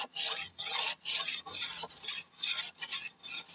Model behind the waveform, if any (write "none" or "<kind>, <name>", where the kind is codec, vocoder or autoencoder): vocoder, BigVGAN v2